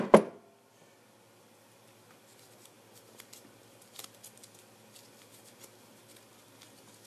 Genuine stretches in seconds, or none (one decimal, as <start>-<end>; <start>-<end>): 0.0-7.1